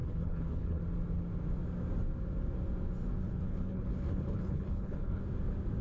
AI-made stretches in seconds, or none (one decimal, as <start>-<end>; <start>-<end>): 0.0-0.8; 3.2-5.2